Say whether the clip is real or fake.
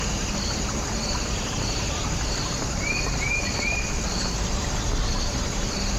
fake